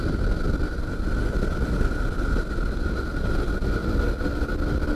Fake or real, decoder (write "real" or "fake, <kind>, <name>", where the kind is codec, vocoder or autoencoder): real